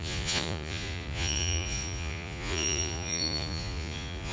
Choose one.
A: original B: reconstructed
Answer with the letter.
B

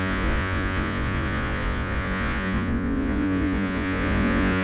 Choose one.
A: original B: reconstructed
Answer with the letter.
B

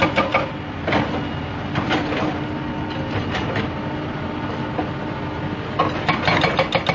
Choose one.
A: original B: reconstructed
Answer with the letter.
A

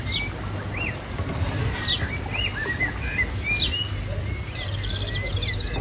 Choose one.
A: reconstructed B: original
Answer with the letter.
B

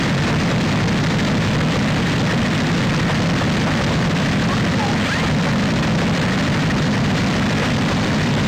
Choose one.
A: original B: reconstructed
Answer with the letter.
B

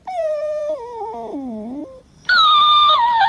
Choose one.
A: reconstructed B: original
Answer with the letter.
A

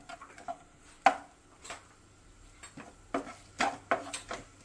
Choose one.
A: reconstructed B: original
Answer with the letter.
B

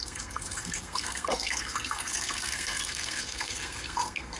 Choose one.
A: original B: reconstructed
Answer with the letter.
B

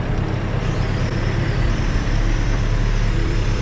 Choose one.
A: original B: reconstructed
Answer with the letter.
B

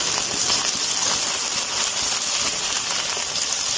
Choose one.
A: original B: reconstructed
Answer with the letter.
A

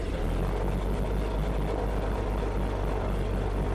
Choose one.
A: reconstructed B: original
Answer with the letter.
B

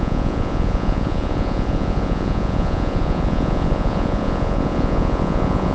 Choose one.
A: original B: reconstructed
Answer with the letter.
B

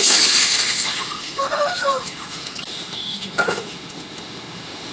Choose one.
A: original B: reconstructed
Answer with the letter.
B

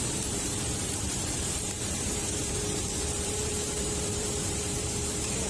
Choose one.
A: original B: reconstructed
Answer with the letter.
B